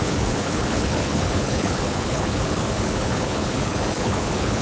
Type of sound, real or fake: fake